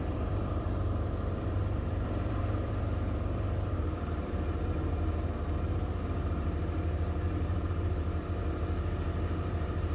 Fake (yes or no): yes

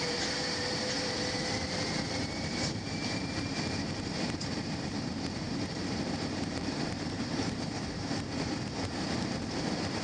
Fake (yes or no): yes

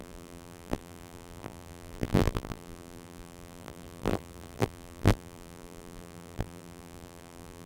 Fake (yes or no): yes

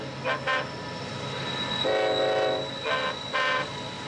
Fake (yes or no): no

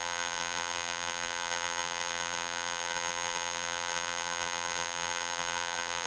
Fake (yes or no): yes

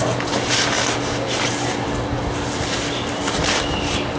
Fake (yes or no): no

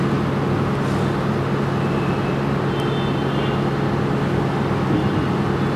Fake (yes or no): no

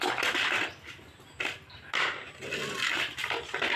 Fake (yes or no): no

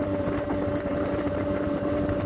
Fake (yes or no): yes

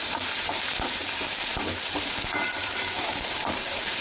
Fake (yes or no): yes